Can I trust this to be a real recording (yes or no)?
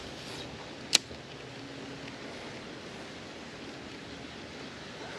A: yes